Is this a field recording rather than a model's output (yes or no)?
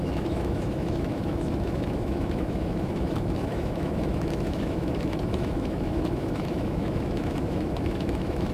no